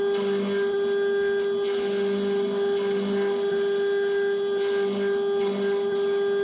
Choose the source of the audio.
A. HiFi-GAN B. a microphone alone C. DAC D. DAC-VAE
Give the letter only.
B